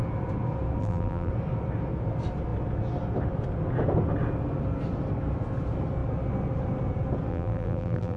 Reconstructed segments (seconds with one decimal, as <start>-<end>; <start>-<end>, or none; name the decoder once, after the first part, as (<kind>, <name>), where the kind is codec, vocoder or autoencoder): 0.8-1.3 (vocoder, BigVGAN v2); 7.3-8.2